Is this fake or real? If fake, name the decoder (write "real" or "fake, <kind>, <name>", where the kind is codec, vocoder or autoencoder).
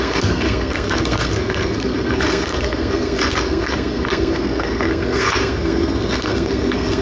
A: fake, codec, SNAC